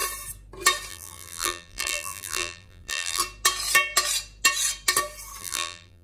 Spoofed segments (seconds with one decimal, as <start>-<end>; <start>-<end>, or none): 0.9-3.2; 5.4-6.0